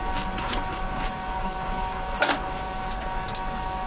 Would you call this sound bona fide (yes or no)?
no